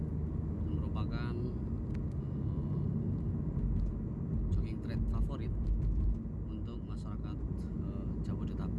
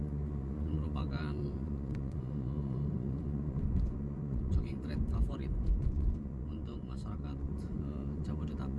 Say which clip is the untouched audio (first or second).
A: first